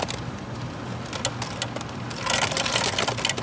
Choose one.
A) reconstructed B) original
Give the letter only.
B